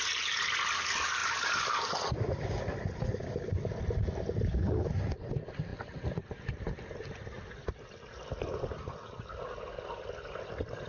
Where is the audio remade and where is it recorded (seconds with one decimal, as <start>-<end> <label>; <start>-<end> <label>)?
0.0-10.9 recorded